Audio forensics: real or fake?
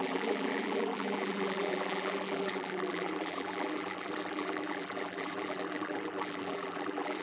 fake